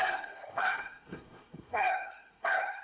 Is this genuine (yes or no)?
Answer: no